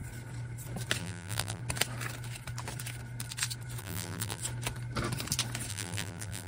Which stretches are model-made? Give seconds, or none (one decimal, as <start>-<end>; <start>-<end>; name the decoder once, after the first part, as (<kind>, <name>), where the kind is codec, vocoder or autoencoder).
1.0-1.6 (vocoder, BigVGAN v2); 3.8-4.4; 5.7-6.5